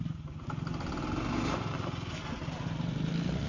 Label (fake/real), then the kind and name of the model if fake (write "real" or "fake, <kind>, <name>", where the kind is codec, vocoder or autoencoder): real